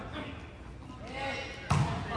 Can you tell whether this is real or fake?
real